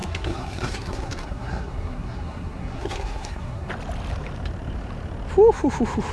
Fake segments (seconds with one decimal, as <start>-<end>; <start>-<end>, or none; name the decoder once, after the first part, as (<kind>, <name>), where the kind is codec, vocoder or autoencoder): 0.0-3.7 (codec, SNAC)